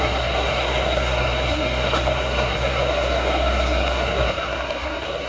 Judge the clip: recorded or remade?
remade